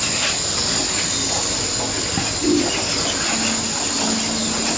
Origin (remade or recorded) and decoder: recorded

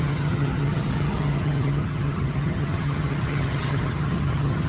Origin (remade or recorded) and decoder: remade, vocoder, HiFi-GAN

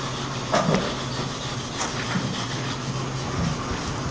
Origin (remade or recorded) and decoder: recorded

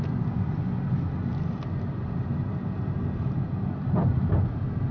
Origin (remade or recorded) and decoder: recorded